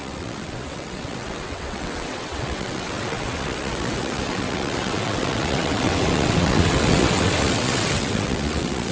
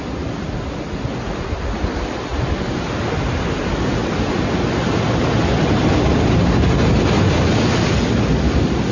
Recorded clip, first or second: second